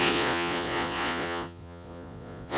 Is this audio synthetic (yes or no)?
yes